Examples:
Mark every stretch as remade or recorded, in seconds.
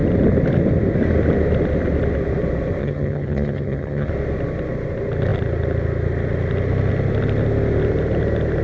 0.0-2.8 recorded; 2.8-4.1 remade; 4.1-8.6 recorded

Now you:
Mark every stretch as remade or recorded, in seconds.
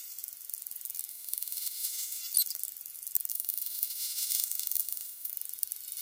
0.0-1.1 recorded; 1.1-2.2 remade; 2.2-3.3 recorded; 3.3-5.3 remade; 5.3-6.0 recorded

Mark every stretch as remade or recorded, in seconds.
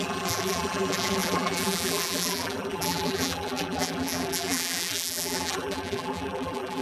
0.0-6.8 remade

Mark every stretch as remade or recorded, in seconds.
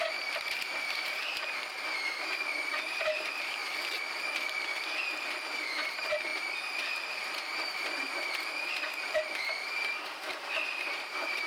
0.0-3.6 remade; 3.6-5.0 recorded; 5.0-11.5 remade